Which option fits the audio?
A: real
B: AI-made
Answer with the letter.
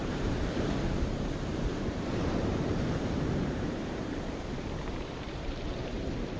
B